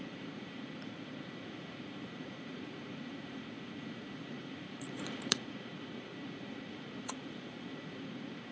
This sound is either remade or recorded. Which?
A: remade